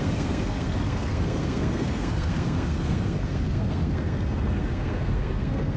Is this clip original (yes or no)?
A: no